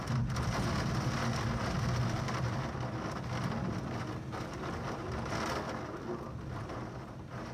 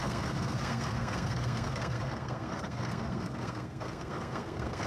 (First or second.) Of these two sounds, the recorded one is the first